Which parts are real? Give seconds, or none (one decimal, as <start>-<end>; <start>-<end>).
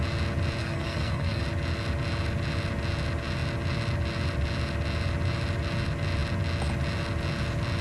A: 0.0-0.6; 1.4-7.8